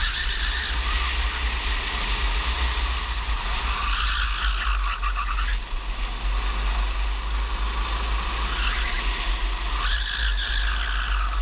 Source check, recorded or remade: recorded